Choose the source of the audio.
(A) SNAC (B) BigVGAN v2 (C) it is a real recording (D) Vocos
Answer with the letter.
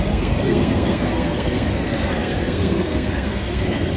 A